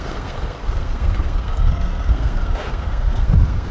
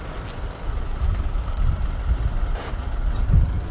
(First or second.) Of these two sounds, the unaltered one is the second